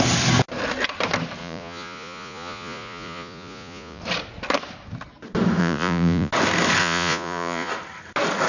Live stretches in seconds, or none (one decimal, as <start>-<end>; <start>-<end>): 0.0-1.4; 4.0-5.6; 6.3-6.8; 7.7-8.5